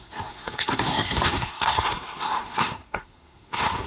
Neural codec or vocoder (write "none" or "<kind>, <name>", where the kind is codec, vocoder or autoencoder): codec, SNAC